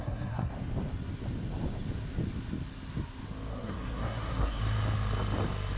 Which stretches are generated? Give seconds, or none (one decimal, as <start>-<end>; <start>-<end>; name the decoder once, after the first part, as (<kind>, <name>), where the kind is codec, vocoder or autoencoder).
0.0-0.5 (codec, SNAC); 3.5-4.6